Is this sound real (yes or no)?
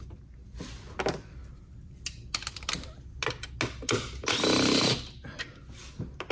yes